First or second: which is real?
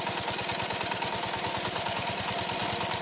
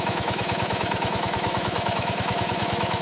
first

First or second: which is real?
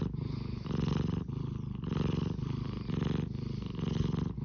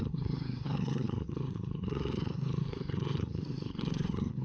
first